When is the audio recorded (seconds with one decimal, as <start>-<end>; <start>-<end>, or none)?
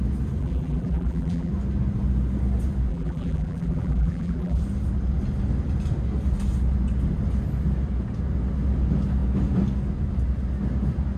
0.0-0.4; 1.5-2.9; 4.6-11.2